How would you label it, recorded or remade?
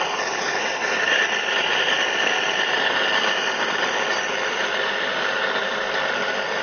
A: recorded